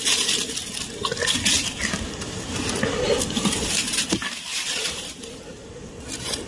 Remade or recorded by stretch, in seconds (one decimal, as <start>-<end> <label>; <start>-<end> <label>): 0.0-4.5 recorded; 4.5-5.7 remade; 5.7-6.5 recorded